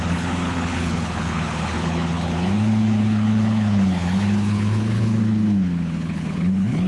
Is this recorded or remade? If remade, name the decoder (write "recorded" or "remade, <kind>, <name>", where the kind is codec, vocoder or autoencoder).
remade, codec, HILCodec